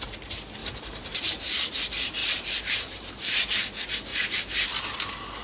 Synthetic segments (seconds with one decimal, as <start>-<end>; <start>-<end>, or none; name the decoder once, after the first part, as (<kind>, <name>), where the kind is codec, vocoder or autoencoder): 0.6-1.3 (vocoder, BigVGAN v2); 2.2-3.1; 4.1-4.7